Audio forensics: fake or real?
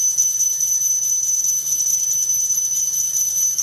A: real